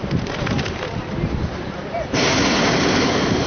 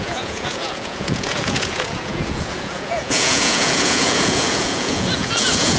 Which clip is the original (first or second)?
first